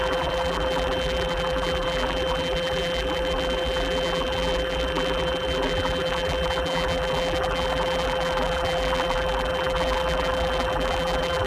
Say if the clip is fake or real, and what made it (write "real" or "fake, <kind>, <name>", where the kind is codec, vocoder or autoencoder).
fake, vocoder, BigVGAN v2